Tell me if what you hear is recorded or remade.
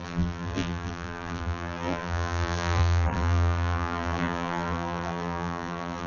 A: remade